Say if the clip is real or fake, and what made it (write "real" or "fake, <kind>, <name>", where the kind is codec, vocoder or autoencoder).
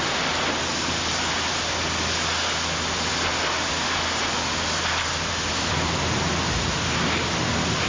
real